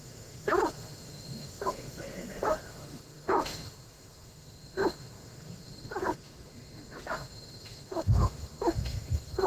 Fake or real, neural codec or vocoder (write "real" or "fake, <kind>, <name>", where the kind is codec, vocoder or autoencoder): fake, autoencoder, DAC-VAE